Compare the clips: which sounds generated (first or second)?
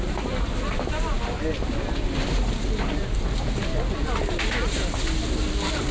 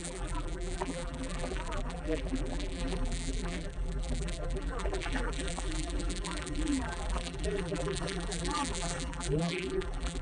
second